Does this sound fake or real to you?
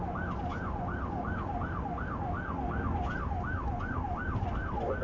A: real